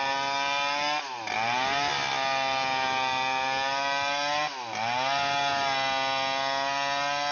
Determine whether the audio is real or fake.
real